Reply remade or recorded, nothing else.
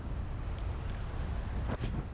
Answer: recorded